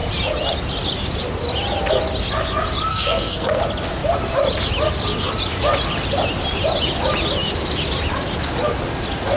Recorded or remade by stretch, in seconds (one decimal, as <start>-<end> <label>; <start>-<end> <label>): 0.0-2.9 recorded; 2.9-3.6 remade; 3.6-9.4 recorded